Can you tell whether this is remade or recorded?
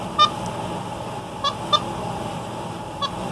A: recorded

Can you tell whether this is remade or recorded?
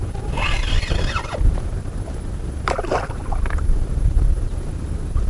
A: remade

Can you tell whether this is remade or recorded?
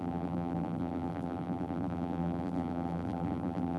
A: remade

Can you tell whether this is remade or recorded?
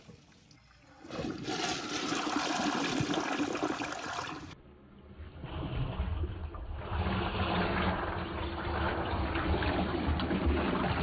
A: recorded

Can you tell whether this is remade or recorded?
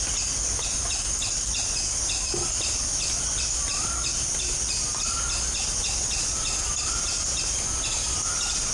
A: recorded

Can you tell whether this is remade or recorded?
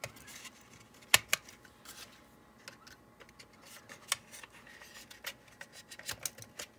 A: recorded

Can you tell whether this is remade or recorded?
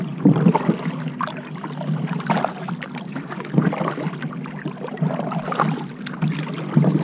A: recorded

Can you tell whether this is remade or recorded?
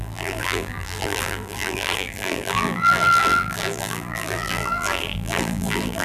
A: remade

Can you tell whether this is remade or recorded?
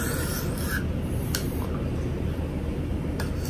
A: recorded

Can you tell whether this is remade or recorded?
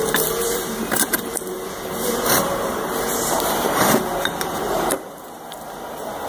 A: remade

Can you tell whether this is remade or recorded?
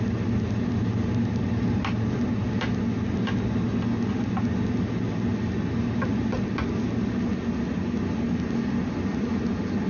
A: recorded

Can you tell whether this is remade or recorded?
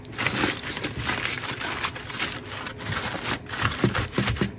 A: recorded